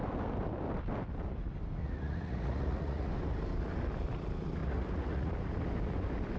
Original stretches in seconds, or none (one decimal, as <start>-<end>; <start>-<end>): 0.0-1.8; 3.1-4.6; 5.3-6.4